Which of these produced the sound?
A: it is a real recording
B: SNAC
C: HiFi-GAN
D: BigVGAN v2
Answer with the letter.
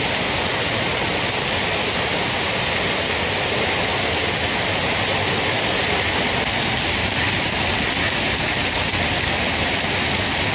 A